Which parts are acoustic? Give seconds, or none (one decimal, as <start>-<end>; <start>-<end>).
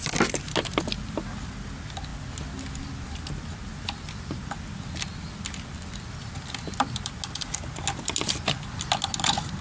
0.0-9.6